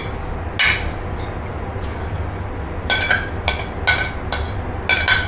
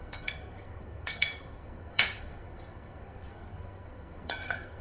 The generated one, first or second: second